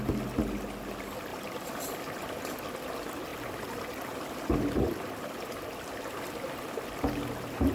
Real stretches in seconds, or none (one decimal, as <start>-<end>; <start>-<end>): 0.0-1.3; 2.4-3.3; 6.3-7.7